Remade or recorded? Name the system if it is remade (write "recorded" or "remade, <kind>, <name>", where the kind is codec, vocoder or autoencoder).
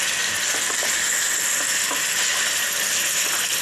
recorded